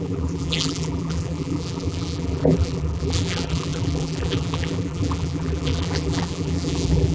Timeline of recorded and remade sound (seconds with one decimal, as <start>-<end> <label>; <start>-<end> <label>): 0.0-7.1 remade